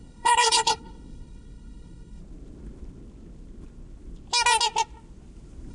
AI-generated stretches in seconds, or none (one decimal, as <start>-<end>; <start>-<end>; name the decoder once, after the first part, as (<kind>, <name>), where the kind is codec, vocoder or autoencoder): 0.0-2.2 (codec, HILCodec)